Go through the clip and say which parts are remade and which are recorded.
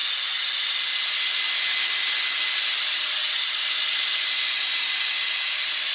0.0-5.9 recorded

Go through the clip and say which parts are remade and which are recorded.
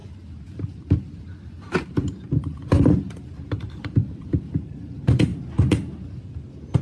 0.0-5.3 remade; 5.3-6.8 recorded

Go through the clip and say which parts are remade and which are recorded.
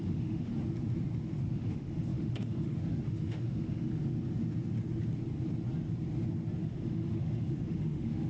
0.0-0.5 remade; 0.5-1.4 recorded; 1.4-3.9 remade; 3.9-6.6 recorded; 6.6-8.3 remade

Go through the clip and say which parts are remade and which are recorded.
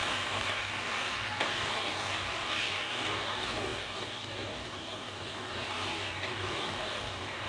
0.0-7.5 remade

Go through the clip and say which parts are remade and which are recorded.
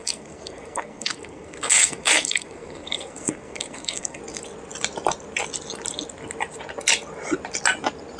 0.0-4.2 remade; 4.2-8.2 recorded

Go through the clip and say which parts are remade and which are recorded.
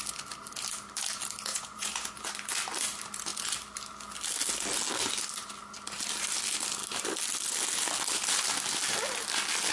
0.0-1.5 recorded; 1.5-2.3 remade; 2.3-9.7 recorded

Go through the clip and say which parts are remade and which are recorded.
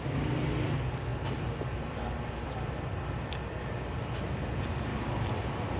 0.0-1.1 recorded; 1.1-3.7 remade; 3.7-4.9 recorded; 4.9-5.8 remade